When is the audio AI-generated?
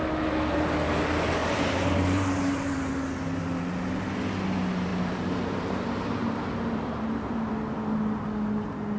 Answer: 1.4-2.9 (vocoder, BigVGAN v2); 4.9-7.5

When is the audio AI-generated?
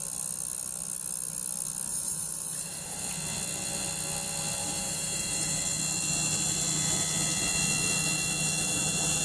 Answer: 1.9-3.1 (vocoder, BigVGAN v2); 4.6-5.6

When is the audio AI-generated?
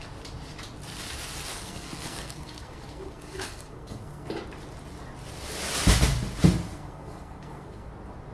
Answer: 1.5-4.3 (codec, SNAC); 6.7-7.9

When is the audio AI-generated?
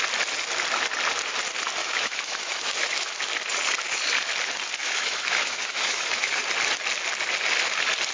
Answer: 1.8-3.1 (autoencoder, DAC-VAE); 4.8-6.4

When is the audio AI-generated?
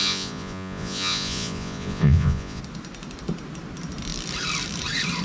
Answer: 0.0-2.6 (vocoder, Vocos)